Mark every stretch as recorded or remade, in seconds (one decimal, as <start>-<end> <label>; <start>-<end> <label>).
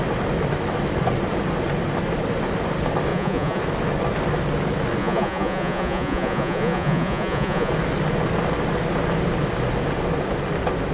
0.0-3.1 recorded; 3.1-3.6 remade; 3.6-5.0 recorded; 5.0-7.7 remade; 7.7-10.9 recorded